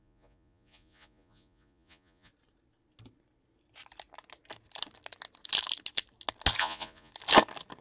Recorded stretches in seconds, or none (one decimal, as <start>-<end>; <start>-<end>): 2.3-6.6; 7.1-7.8